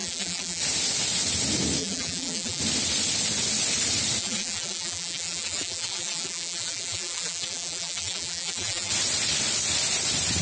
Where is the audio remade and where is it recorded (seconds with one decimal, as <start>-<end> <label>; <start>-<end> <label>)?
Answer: 0.0-0.6 remade; 0.6-1.8 recorded; 1.8-2.6 remade; 2.6-4.2 recorded; 4.2-8.9 remade; 8.9-10.4 recorded